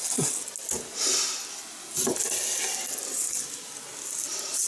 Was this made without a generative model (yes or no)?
yes